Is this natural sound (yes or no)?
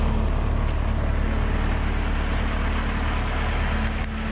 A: yes